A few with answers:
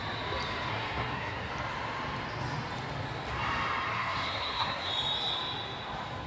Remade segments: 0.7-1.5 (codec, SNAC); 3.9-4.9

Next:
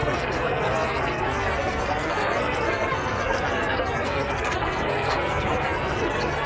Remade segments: 0.0-6.5 (codec, SNAC)

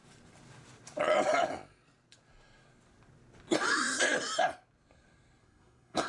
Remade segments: 5.4-6.1 (codec, SNAC)

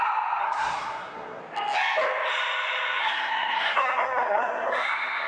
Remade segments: 0.4-1.4 (codec, SNAC); 3.0-5.3

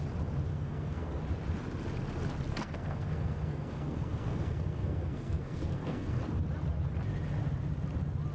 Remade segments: 0.5-1.2 (codec, SNAC); 2.5-6.2

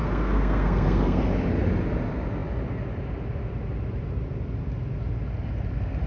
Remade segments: 0.0-1.2 (codec, SNAC)

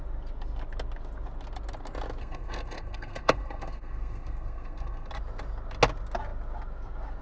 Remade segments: 2.2-5.1 (codec, SNAC)

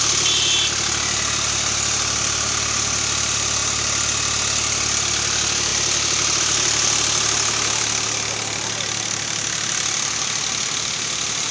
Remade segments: none